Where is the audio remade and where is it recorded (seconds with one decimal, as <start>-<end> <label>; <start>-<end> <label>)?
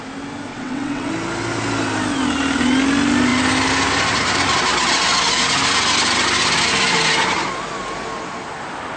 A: 0.0-0.5 recorded; 0.5-1.1 remade; 1.1-9.0 recorded